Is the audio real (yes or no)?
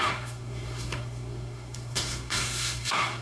no